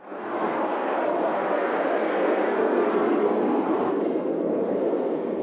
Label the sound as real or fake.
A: fake